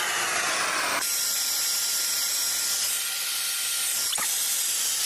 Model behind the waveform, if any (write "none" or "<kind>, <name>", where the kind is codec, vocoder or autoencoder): none